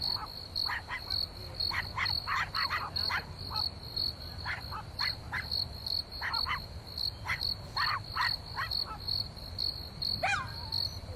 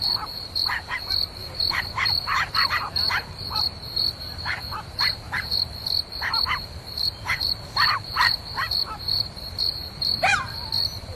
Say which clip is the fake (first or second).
second